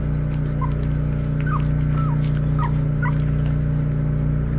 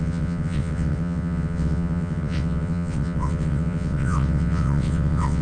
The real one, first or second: first